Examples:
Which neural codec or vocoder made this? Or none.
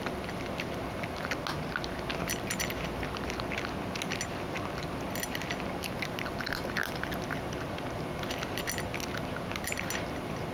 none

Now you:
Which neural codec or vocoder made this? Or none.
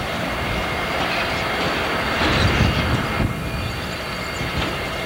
none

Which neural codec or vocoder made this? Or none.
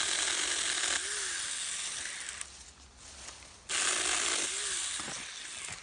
none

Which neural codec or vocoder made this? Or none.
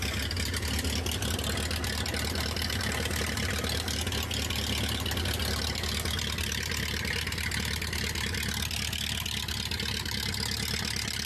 none